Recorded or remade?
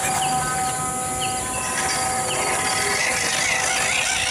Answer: recorded